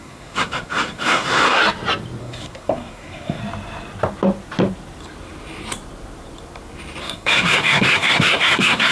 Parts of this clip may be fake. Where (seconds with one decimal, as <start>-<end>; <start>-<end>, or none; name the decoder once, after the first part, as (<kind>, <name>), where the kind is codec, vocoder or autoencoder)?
0.0-1.6 (codec, SNAC); 2.2-3.4; 7.0-8.9